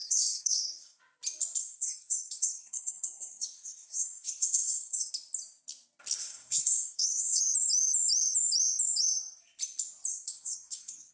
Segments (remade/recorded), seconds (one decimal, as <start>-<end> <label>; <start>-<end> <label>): 0.0-1.0 remade; 1.0-1.6 recorded; 1.6-5.1 remade; 5.1-6.2 recorded; 6.2-7.4 remade; 7.4-10.1 recorded; 10.1-11.1 remade